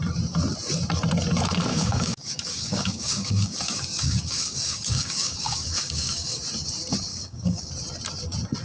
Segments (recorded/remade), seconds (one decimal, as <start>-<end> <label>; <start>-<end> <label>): 0.0-1.7 recorded; 1.7-6.4 remade; 6.4-7.1 recorded; 7.1-7.7 remade; 7.7-8.6 recorded